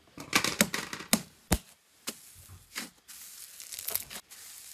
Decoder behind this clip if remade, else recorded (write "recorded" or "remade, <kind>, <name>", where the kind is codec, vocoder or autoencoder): recorded